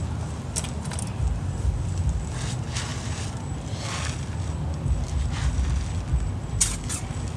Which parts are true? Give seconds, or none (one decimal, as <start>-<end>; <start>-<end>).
0.0-7.4